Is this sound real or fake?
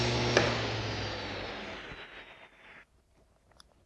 real